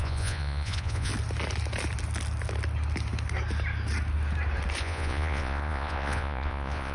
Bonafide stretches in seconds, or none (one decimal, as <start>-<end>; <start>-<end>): 1.1-4.8